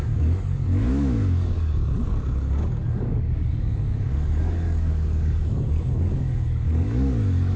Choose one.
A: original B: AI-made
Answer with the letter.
B